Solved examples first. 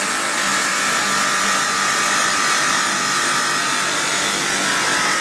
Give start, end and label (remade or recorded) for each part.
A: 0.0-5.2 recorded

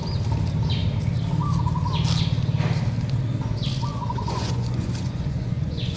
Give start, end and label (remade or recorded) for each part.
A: 0.0-3.9 recorded; 3.9-6.0 remade

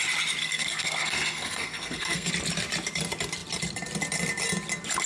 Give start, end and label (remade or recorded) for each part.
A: 0.0-0.4 recorded; 0.4-2.3 remade; 2.3-5.1 recorded

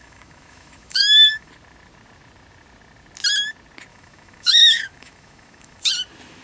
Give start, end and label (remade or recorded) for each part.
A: 0.0-1.5 remade; 1.5-3.9 recorded; 3.9-5.9 remade; 5.9-6.4 recorded

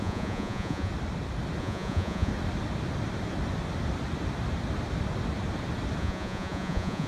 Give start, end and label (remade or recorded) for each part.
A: 0.0-0.9 remade; 0.9-1.6 recorded; 1.6-2.3 remade; 2.3-6.0 recorded; 6.0-7.1 remade

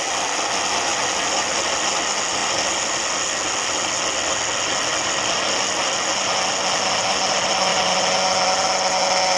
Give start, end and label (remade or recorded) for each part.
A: 0.0-9.4 recorded

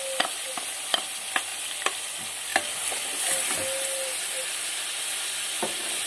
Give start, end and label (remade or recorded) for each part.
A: 0.0-6.1 recorded

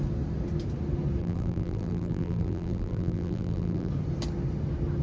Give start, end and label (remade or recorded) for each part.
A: 0.0-1.2 recorded; 1.2-3.9 remade; 3.9-5.0 recorded